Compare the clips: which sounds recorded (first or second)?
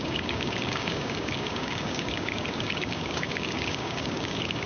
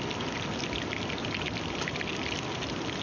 second